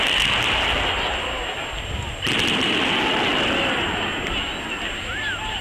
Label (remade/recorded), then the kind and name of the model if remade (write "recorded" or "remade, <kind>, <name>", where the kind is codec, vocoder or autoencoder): recorded